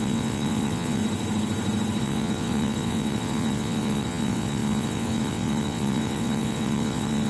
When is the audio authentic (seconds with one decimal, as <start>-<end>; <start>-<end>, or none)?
1.0-2.0